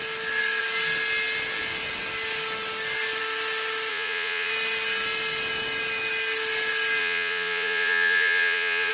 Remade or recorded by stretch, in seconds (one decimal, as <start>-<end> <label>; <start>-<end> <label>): 0.0-3.9 recorded; 3.9-4.5 remade; 4.5-7.0 recorded; 7.0-8.9 remade